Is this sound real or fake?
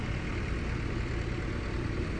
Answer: real